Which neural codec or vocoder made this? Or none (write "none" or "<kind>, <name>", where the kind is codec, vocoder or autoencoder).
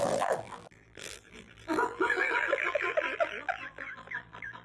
vocoder, BigVGAN v2